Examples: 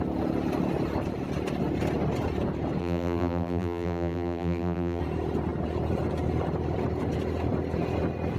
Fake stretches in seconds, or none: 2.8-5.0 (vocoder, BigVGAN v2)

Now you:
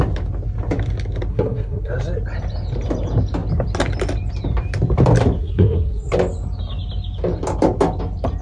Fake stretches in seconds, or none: 1.3-1.9 (codec, SNAC); 5.4-6.1

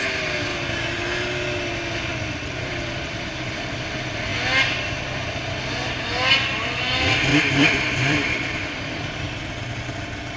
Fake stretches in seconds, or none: 2.1-3.7 (vocoder, BigVGAN v2); 7.3-9.5

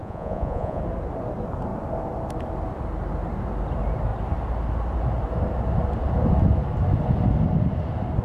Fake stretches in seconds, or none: 0.0-0.8 (vocoder, Vocos)